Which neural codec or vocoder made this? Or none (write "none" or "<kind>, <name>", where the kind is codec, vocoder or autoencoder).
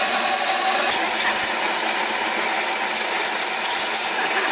none